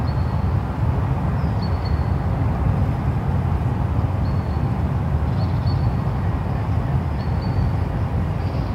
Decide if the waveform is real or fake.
real